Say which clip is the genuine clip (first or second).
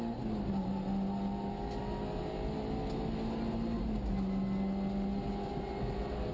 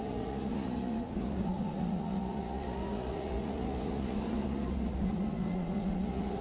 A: first